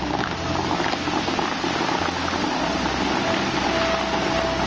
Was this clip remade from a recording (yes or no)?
no